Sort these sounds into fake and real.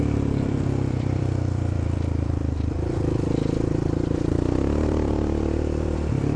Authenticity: fake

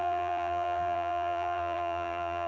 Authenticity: fake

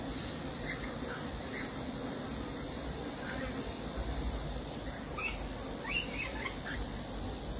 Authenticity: real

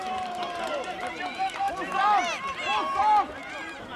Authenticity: fake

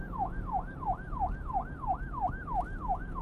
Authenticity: real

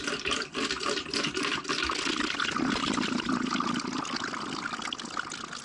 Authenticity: real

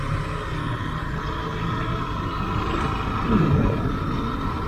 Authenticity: real